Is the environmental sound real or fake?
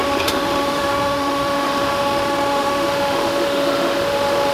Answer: fake